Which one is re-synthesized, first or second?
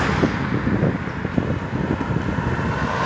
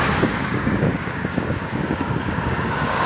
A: second